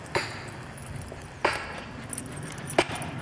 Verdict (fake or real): real